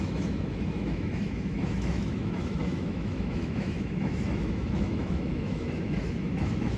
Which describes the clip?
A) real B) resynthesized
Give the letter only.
B